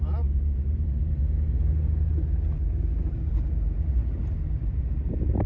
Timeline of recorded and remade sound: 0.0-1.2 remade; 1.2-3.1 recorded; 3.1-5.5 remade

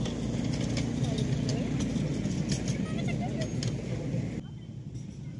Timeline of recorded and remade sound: 0.0-5.4 recorded

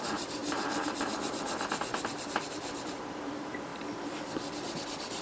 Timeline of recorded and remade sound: 0.0-3.7 remade; 3.7-5.2 recorded